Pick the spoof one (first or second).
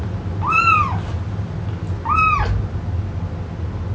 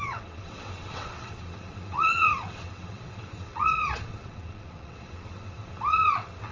second